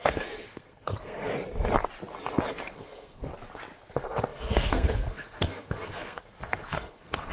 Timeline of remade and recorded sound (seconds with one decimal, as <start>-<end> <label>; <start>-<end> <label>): 0.0-1.3 remade; 1.3-2.7 recorded; 2.7-3.3 remade; 3.3-3.9 recorded; 3.9-7.3 remade